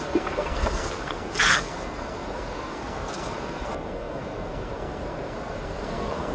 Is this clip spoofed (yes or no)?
yes